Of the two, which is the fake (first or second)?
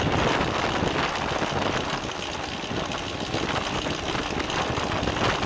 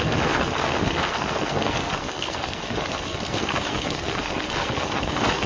second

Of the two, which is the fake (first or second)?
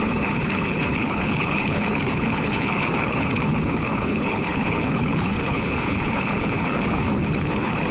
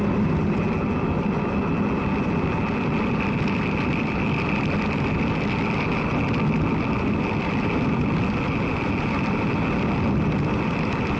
first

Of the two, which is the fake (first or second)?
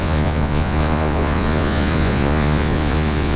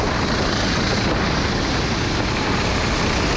first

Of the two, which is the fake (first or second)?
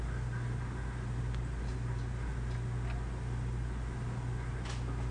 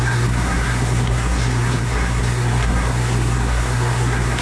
second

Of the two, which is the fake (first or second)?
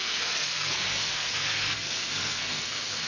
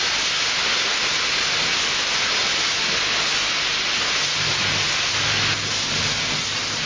first